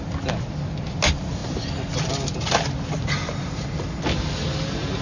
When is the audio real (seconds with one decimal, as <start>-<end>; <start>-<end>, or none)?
0.0-5.0